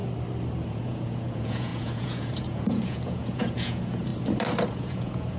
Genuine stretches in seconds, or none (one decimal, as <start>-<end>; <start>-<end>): 0.0-0.7; 4.1-4.7